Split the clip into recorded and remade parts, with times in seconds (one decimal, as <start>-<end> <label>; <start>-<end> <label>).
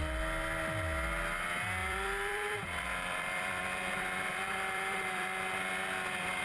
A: 0.0-1.8 recorded; 1.8-5.6 remade; 5.6-6.4 recorded